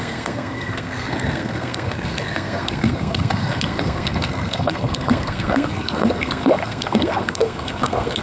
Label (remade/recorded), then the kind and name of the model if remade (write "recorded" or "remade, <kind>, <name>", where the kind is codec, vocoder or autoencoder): remade, codec, SNAC